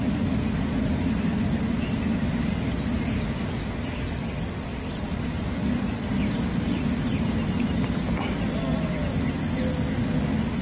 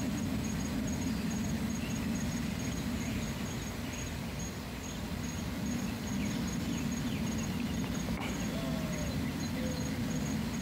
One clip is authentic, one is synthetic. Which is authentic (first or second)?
second